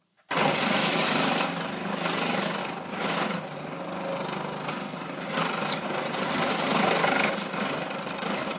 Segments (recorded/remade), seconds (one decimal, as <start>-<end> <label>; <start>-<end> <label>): 0.0-2.6 recorded; 2.6-3.4 remade; 3.4-8.6 recorded